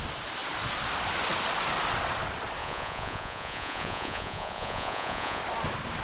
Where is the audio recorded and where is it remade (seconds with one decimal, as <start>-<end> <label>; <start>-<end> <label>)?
0.0-2.6 recorded; 2.6-5.4 remade; 5.4-6.0 recorded

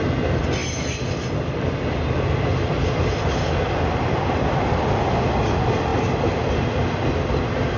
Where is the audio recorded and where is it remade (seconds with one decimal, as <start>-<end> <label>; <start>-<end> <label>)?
0.0-7.8 recorded